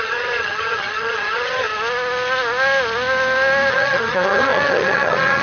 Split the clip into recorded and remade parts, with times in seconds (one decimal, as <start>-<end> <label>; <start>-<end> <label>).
0.0-1.7 remade; 1.7-3.7 recorded; 3.7-5.4 remade